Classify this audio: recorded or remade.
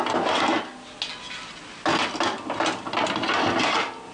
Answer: recorded